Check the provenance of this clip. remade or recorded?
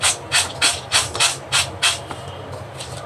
recorded